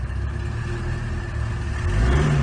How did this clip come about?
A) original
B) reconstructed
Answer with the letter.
A